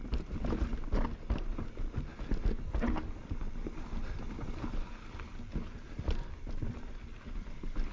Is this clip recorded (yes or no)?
yes